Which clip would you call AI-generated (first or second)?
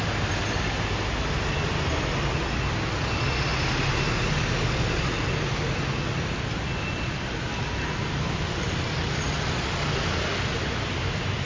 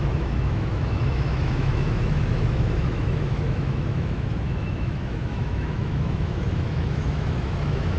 second